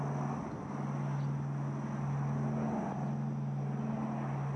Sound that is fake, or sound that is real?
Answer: real